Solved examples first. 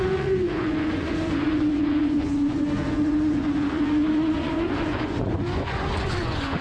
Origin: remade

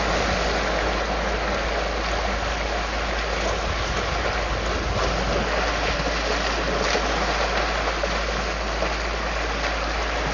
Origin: recorded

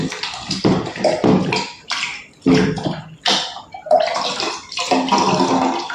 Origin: recorded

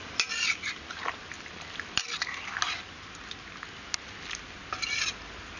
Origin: recorded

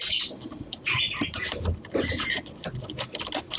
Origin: recorded